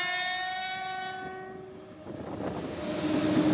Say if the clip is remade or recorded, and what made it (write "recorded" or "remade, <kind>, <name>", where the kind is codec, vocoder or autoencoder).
recorded